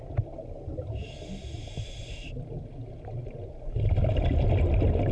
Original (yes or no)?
yes